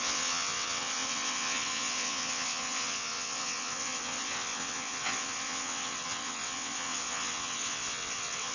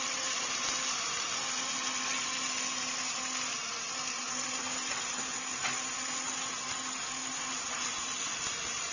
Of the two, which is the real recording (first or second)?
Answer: second